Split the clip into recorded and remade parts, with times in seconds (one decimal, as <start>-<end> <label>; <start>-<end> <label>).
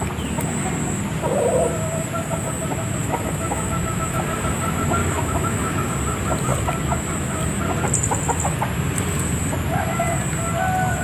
0.0-3.0 recorded; 3.0-4.2 remade; 4.2-5.0 recorded; 5.0-5.9 remade; 5.9-11.0 recorded